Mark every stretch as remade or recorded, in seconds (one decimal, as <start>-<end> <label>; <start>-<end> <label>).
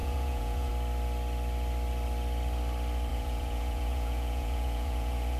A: 0.0-0.7 remade; 0.7-3.1 recorded; 3.1-5.4 remade